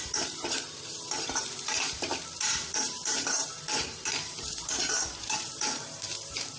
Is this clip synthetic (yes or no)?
yes